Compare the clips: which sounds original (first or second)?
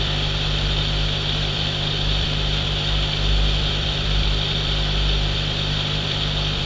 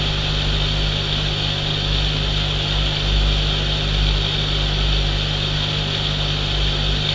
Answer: second